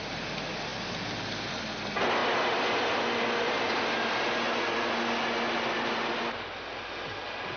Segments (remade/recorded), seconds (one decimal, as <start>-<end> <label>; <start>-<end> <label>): 0.0-7.6 recorded